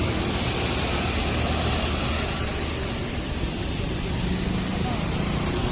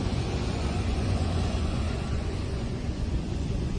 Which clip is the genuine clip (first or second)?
first